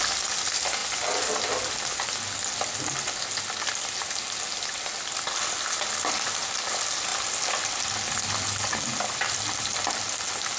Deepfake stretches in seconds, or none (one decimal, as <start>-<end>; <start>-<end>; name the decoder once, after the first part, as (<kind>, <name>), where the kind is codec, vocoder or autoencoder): none